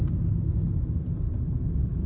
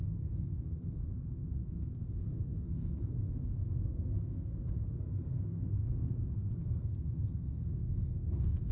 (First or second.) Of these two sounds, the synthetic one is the second